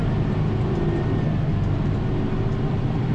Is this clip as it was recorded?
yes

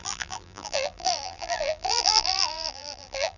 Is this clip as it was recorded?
no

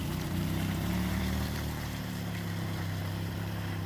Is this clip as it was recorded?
no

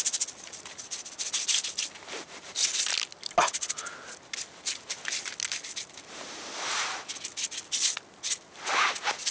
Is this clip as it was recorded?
yes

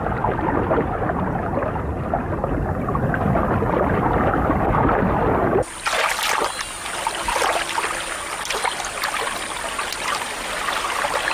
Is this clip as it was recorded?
yes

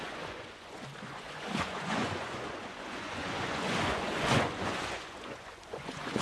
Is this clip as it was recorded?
no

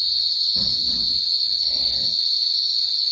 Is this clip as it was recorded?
yes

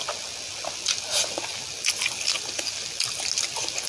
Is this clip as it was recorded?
yes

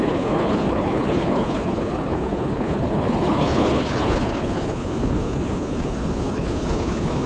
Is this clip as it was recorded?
no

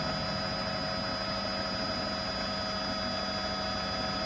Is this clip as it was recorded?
yes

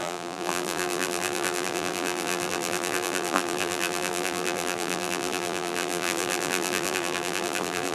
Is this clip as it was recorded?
no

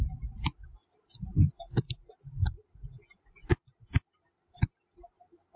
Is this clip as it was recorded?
yes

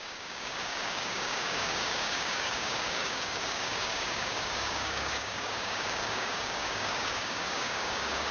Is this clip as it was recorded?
no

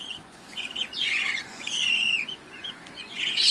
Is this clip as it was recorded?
no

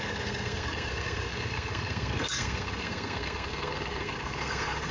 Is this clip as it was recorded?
no